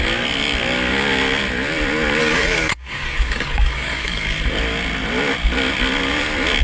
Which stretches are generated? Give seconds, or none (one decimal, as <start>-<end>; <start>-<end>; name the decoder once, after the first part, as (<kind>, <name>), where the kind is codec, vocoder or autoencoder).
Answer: 2.2-4.4 (codec, DAC)